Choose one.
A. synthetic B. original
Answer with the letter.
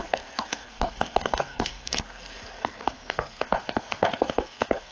A